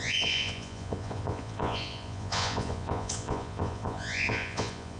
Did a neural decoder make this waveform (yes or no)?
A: yes